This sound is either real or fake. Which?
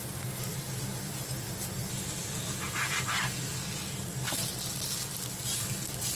real